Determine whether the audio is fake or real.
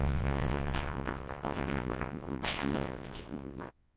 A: fake